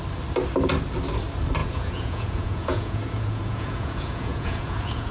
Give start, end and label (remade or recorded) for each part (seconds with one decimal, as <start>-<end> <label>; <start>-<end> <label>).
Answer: 0.0-1.6 recorded; 1.6-5.1 remade